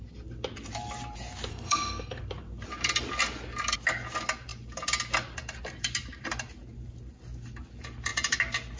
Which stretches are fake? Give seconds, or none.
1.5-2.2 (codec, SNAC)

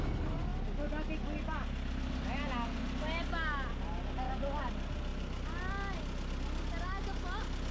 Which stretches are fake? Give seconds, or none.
none

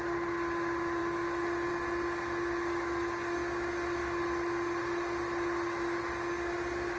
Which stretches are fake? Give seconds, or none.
none